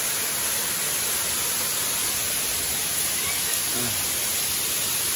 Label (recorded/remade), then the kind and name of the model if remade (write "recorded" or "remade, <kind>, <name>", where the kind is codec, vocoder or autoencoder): recorded